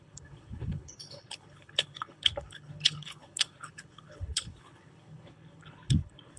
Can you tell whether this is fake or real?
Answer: fake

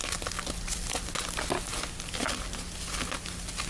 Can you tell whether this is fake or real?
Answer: real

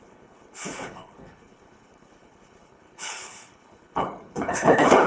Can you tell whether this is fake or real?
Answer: fake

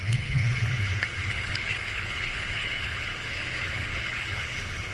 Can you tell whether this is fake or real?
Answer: fake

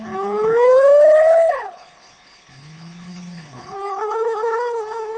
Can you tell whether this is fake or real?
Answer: fake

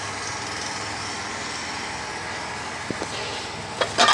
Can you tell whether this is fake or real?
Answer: real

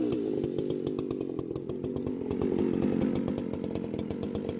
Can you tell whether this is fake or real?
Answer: real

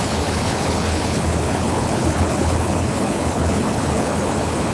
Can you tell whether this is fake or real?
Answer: fake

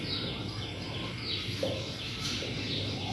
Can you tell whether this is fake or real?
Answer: real